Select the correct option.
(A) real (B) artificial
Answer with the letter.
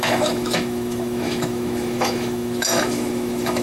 B